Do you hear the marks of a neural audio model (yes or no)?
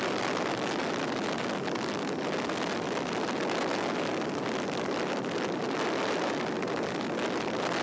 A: no